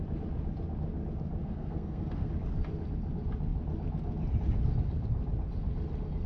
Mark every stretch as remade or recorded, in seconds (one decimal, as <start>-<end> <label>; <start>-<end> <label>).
0.0-1.4 recorded; 1.4-2.3 remade; 2.3-6.3 recorded